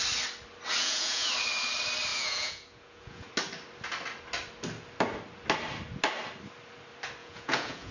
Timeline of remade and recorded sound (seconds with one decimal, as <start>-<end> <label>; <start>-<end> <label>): 0.0-0.8 recorded; 0.8-1.3 remade; 1.3-2.1 recorded; 2.1-3.3 remade; 3.3-7.2 recorded; 7.2-7.9 remade